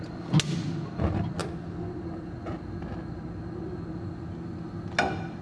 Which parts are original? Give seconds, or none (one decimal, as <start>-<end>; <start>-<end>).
0.0-5.4